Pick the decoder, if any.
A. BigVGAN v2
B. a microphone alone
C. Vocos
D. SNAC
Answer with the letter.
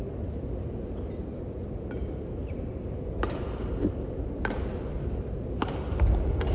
B